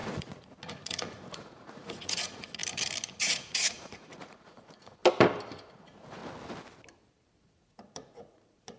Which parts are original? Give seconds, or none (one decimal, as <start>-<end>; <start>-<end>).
2.6-3.1; 5.0-5.7; 6.2-7.4